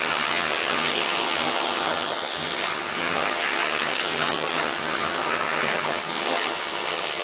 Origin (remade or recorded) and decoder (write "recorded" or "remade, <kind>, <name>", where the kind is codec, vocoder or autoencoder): remade, vocoder, HiFi-GAN